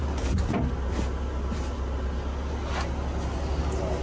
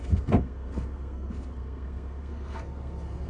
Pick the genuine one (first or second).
first